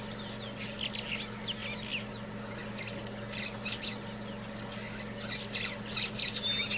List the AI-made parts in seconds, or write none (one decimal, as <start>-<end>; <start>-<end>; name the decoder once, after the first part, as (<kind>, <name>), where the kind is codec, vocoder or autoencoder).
none